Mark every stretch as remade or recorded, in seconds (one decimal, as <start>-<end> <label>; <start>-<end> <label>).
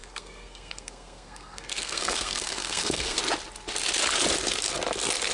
0.0-3.2 remade; 3.2-5.3 recorded